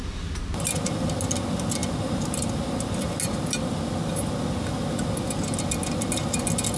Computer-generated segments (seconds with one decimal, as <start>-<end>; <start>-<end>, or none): none